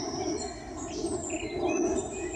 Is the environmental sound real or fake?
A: real